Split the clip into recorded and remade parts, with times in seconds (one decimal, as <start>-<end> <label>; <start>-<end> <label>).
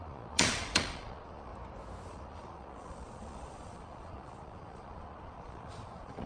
0.0-1.5 remade; 1.5-2.1 recorded; 2.1-6.3 remade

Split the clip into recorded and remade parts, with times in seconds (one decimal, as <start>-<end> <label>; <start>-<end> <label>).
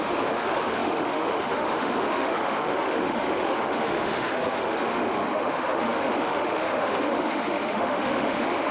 0.0-8.7 remade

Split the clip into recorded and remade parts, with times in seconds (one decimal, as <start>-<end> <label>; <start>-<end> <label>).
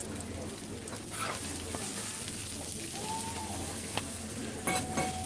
0.0-3.4 recorded; 3.4-4.4 remade; 4.4-5.3 recorded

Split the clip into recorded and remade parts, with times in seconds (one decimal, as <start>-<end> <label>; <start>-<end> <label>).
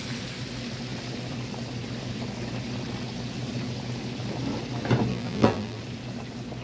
0.0-5.1 recorded; 5.1-5.8 remade; 5.8-6.6 recorded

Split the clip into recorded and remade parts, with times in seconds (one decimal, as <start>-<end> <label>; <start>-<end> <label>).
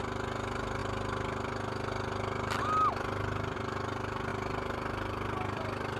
0.0-0.8 remade; 0.8-2.6 recorded; 2.6-6.0 remade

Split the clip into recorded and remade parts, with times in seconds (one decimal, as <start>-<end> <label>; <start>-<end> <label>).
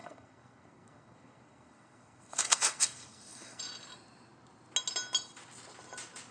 0.0-3.6 remade; 3.6-6.3 recorded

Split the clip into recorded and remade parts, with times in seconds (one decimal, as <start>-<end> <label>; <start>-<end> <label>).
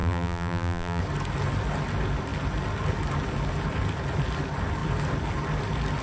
0.0-1.0 remade; 1.0-6.0 recorded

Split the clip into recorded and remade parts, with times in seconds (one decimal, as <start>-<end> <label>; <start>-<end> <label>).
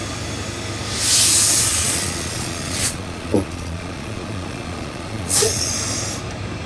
0.0-1.7 recorded; 1.7-5.7 remade; 5.7-6.7 recorded